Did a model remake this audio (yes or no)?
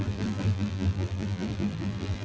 yes